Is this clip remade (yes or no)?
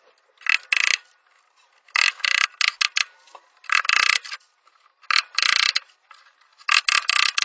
no